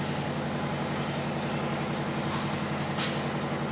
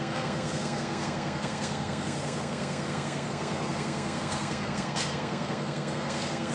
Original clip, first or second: first